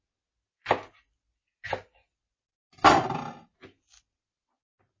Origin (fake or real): real